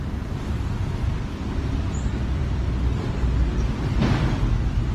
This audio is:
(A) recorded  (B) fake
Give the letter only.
A